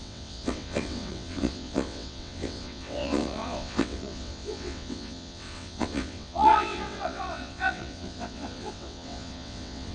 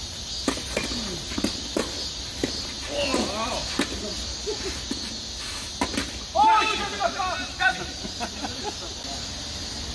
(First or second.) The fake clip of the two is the first